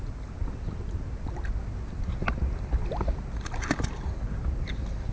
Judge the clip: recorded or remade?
recorded